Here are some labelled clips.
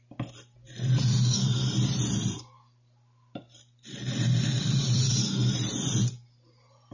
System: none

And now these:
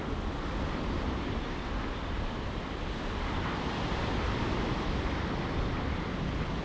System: none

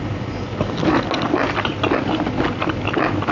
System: none